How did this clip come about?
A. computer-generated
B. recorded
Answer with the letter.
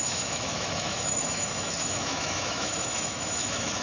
A